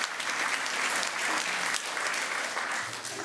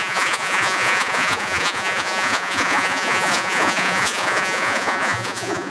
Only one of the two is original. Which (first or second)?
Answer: first